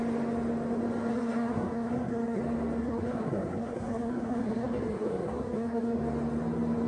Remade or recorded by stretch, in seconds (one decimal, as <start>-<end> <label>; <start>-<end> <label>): 0.0-1.1 recorded; 1.1-2.4 remade; 2.4-2.8 recorded; 2.8-6.0 remade; 6.0-6.9 recorded